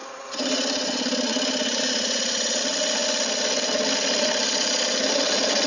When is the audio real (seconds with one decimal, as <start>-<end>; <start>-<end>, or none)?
2.6-5.7